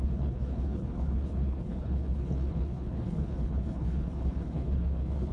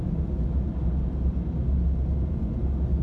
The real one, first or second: second